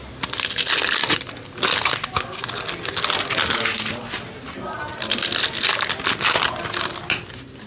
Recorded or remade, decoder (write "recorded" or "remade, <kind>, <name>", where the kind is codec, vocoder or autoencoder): recorded